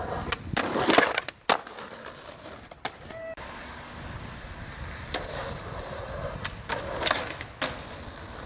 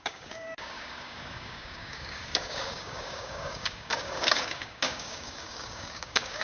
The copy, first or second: second